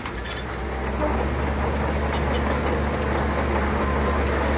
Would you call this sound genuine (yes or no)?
yes